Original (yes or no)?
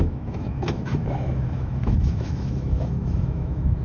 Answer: no